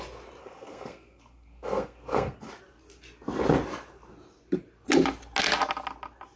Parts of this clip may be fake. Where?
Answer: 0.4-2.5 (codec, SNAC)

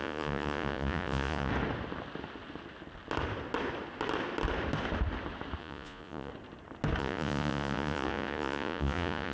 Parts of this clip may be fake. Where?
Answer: 0.0-1.5 (vocoder, Vocos); 5.6-6.3; 7.0-9.3

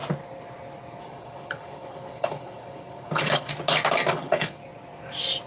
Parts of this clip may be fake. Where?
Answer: 1.0-3.5 (codec, HILCodec); 4.1-4.6

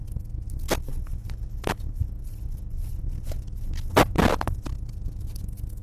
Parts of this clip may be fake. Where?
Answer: none

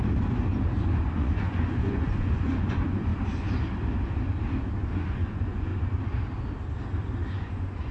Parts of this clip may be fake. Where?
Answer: 0.8-3.1 (vocoder, Vocos); 4.8-5.7; 7.3-7.9

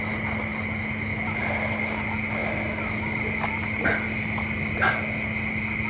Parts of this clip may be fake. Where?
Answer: 0.5-1.7 (vocoder, BigVGAN v2); 2.4-4.7